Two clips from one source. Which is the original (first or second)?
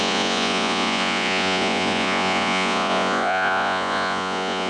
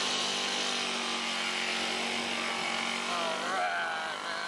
second